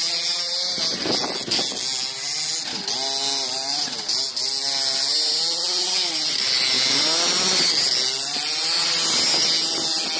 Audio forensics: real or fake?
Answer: real